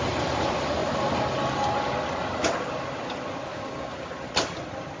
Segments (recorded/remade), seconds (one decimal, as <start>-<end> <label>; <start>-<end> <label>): 0.0-3.5 recorded; 3.5-4.1 remade; 4.1-5.0 recorded